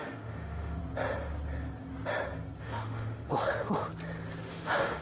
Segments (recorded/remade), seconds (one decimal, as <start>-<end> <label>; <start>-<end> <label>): 0.0-0.8 remade; 0.8-2.6 recorded; 2.6-3.9 remade; 3.9-4.5 recorded; 4.5-5.0 remade